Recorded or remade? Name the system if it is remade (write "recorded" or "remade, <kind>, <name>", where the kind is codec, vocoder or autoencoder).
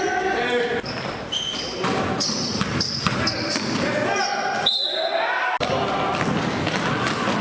recorded